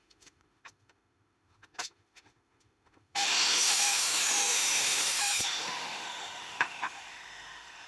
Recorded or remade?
remade